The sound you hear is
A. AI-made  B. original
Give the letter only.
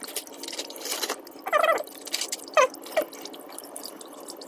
B